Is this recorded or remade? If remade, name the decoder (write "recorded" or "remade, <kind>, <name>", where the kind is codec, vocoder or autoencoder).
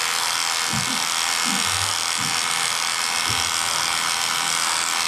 recorded